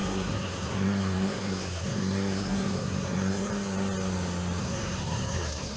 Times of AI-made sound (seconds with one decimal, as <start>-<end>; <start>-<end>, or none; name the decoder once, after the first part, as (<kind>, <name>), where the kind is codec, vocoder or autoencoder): 0.0-3.5 (codec, SNAC); 4.6-5.8